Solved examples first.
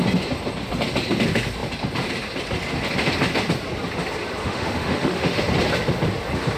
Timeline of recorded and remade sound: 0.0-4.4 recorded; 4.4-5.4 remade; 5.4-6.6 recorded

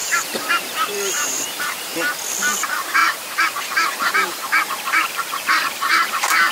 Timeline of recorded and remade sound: 0.0-1.9 remade; 1.9-2.6 recorded; 2.6-6.5 remade

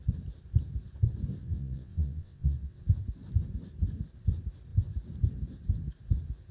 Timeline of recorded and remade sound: 0.0-1.4 recorded; 1.4-2.8 remade; 2.8-6.5 recorded

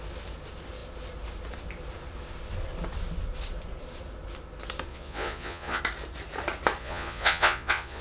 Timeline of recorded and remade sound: 0.0-4.9 recorded; 4.9-5.8 remade; 5.8-6.8 recorded; 6.8-8.0 remade

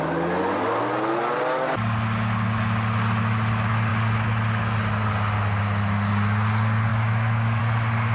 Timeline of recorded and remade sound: 0.0-6.9 recorded; 6.9-7.6 remade; 7.6-8.1 recorded